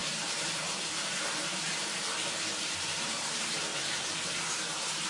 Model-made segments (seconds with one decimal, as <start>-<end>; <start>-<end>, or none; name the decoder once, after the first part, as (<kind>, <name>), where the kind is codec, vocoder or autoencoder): 0.0-3.7 (vocoder, BigVGAN v2)